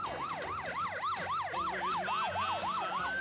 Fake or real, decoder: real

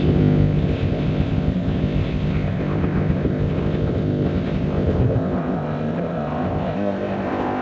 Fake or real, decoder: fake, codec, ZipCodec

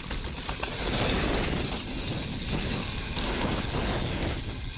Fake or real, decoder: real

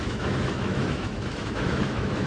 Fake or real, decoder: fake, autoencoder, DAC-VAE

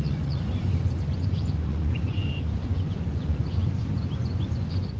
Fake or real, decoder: fake, vocoder, Vocos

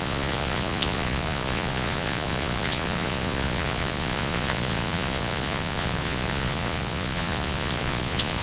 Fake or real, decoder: fake, vocoder, Vocos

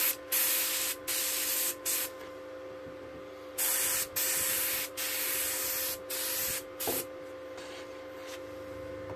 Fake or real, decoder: real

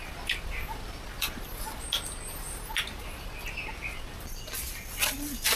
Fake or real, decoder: real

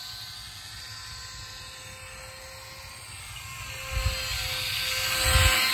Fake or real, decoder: real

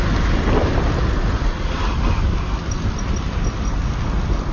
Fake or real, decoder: real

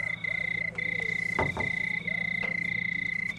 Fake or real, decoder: real